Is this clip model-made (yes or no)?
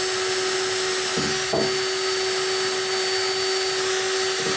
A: no